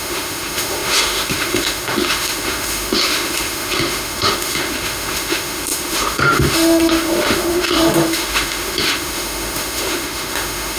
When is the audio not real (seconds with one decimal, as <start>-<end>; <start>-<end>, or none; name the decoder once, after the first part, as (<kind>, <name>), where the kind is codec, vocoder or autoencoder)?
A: 0.0-10.8 (autoencoder, DAC-VAE)